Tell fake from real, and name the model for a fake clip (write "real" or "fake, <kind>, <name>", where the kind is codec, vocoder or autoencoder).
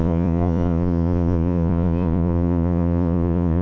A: fake, vocoder, Vocos